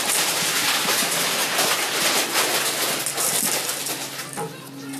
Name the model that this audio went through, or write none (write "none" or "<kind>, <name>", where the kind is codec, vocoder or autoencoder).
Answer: none